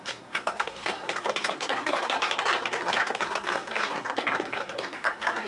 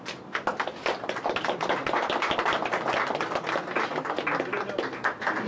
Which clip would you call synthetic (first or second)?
first